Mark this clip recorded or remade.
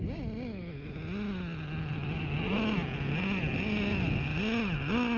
recorded